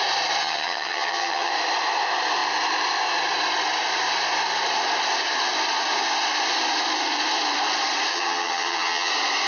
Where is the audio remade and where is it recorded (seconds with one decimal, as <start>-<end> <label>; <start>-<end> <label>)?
0.0-0.4 recorded; 0.4-1.5 remade; 1.5-8.1 recorded; 8.1-9.1 remade; 9.1-9.5 recorded